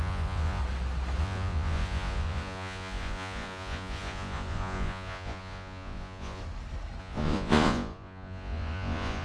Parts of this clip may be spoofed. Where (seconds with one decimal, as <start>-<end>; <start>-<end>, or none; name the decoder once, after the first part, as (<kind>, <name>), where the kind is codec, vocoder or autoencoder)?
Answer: 0.0-0.6 (vocoder, Vocos); 1.2-6.4; 7.0-9.2